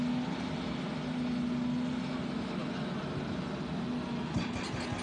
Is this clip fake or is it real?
real